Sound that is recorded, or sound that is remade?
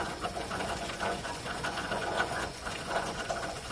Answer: remade